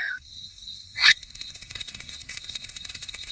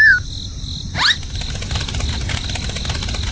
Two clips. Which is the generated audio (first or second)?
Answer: first